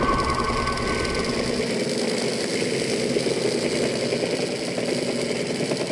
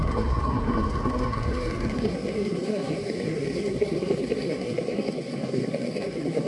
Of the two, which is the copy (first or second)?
second